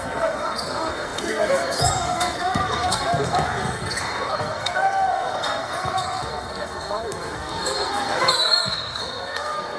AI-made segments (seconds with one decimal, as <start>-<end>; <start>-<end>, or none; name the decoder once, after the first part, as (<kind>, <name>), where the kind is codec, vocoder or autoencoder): 0.0-9.8 (codec, SNAC)